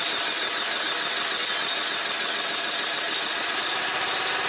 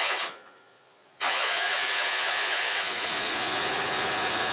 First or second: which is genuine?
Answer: first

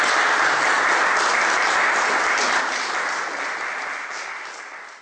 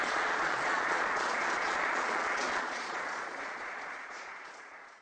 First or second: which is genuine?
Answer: first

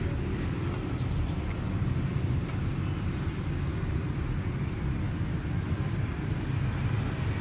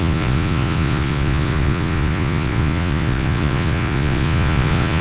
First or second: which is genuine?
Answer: first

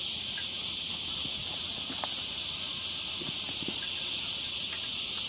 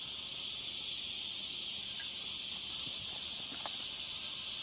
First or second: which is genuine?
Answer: second